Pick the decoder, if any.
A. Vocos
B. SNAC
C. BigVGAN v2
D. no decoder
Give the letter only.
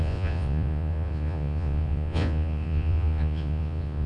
A